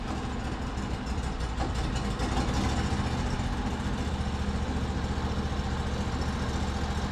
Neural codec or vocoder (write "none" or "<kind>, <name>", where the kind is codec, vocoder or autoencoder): none